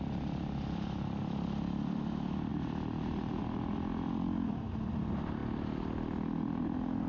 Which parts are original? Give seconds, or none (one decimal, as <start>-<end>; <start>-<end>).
0.0-7.1